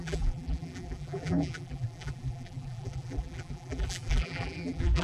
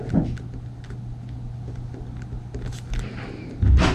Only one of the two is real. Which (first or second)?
second